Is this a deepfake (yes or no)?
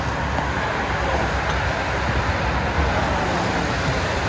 no